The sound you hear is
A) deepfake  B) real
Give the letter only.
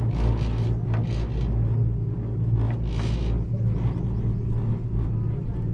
B